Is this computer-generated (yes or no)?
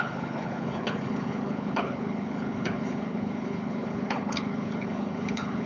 yes